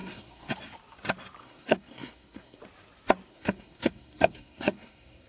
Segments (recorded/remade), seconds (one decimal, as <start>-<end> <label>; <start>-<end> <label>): 0.0-0.5 remade; 0.5-1.4 recorded; 1.4-2.6 remade; 2.6-3.3 recorded; 3.3-5.3 remade

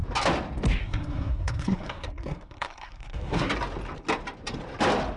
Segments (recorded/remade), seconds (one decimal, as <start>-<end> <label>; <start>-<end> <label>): 0.0-0.8 recorded; 0.8-3.5 remade; 3.5-5.2 recorded

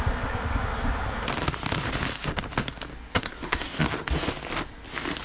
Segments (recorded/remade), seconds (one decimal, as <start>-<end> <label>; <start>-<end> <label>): 0.0-3.1 recorded; 3.1-3.8 remade; 3.8-5.2 recorded